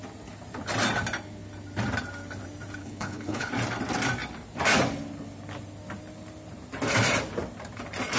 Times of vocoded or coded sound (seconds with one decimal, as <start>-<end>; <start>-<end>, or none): 2.8-3.5